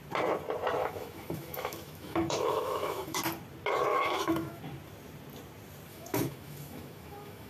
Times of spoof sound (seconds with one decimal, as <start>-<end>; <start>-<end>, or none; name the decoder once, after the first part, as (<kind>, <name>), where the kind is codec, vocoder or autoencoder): 0.8-3.2 (autoencoder, DAC-VAE); 3.9-4.6; 5.9-7.5